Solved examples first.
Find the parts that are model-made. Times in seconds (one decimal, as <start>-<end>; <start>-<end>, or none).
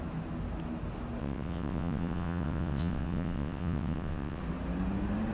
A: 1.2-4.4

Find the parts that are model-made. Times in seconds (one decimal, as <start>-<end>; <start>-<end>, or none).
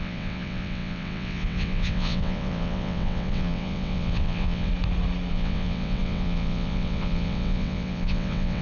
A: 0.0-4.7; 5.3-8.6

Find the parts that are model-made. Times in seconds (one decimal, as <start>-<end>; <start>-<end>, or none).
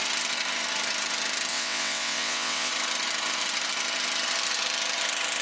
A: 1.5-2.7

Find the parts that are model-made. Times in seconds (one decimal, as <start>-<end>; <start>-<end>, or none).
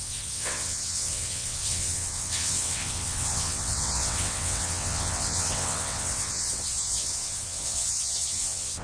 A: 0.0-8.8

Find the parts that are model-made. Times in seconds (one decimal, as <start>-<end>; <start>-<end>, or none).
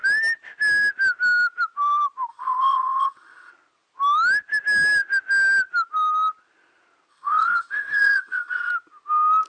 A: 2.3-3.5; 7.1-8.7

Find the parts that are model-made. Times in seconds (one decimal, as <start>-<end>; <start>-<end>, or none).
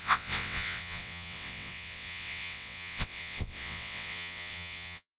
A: 0.0-5.2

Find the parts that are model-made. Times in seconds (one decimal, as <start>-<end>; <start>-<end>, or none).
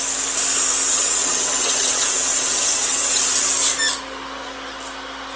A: 0.9-3.4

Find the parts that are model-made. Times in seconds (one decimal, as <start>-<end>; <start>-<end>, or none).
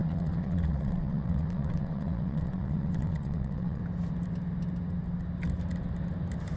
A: 0.0-3.8